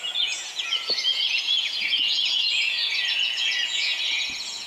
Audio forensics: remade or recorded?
remade